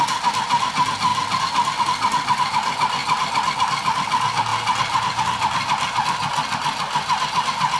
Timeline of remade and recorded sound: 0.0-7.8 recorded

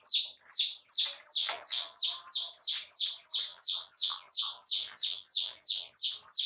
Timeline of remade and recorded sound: 0.0-1.4 recorded; 1.4-2.0 remade; 2.0-3.5 recorded; 3.5-5.9 remade; 5.9-6.5 recorded

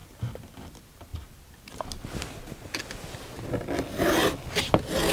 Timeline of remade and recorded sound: 0.0-5.1 recorded

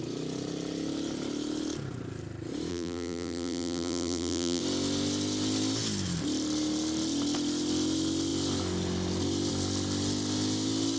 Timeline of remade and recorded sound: 0.0-2.7 recorded; 2.7-4.6 remade; 4.6-11.0 recorded